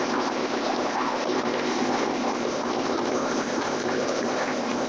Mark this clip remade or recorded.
remade